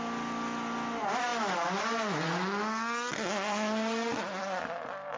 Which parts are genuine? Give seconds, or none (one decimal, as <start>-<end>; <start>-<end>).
0.0-5.2